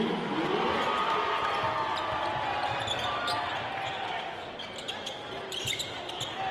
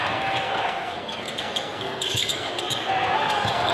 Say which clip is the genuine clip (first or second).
first